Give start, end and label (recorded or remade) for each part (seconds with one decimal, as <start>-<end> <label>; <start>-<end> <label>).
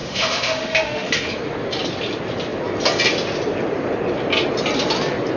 0.0-1.3 remade; 1.3-5.4 recorded